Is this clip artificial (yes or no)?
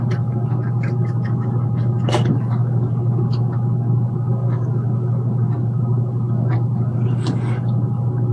yes